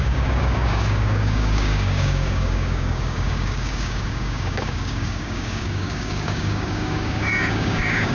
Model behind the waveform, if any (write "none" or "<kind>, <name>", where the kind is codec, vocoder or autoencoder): codec, DAC